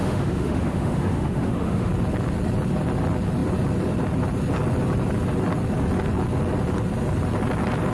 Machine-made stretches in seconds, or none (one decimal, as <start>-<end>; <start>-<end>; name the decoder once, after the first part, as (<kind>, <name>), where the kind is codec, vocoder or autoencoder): 0.0-1.9 (autoencoder, DAC-VAE)